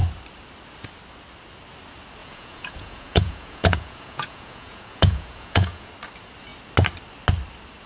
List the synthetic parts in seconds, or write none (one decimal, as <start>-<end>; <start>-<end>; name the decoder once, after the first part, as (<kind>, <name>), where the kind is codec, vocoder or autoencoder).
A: 2.2-5.9 (vocoder, Vocos)